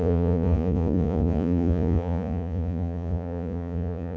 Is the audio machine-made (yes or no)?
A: yes